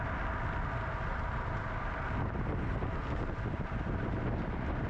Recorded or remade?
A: recorded